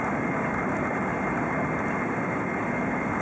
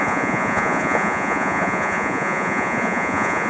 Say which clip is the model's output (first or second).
second